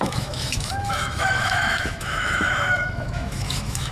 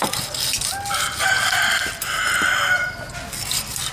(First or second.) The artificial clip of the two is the first